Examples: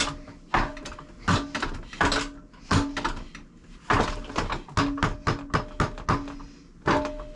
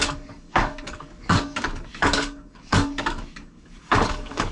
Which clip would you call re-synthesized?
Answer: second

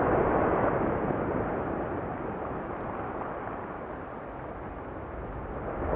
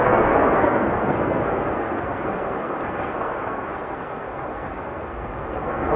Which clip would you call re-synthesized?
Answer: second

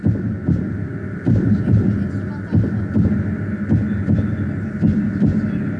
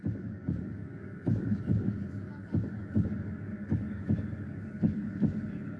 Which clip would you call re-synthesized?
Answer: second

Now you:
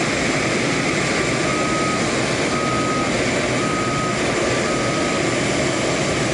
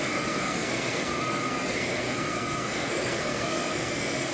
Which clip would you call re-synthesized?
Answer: second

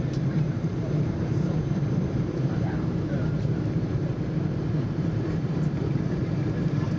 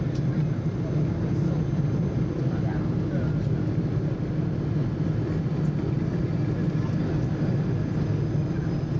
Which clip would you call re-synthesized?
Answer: first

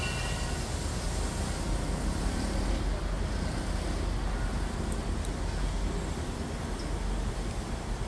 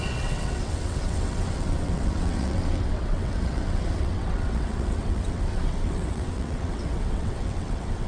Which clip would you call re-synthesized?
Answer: second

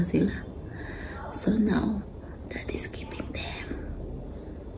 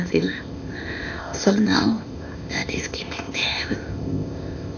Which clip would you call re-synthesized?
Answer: second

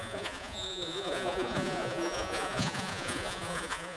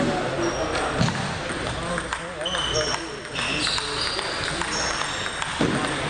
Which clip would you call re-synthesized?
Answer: first